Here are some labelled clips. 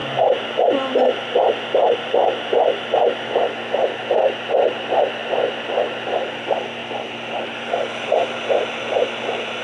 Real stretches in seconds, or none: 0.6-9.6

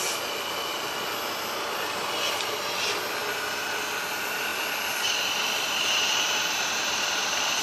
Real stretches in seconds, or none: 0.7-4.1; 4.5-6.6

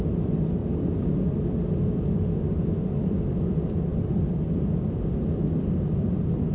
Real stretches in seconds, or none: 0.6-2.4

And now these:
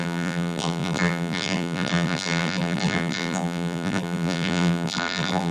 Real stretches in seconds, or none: none

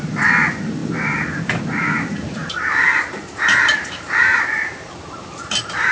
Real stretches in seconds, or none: none

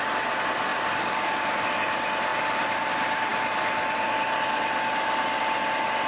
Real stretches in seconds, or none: 0.0-0.7; 1.4-2.3; 2.9-3.3; 5.4-6.1

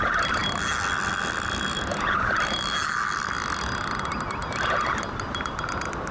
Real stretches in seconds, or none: 0.0-6.1

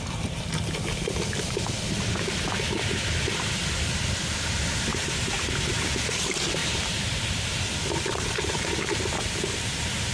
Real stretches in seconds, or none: 0.0-4.9; 5.5-6.6; 9.7-10.1